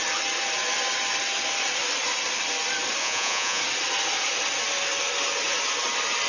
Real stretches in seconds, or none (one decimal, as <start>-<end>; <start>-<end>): 0.0-3.0; 3.6-6.3